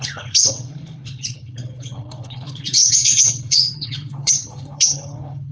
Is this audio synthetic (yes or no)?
yes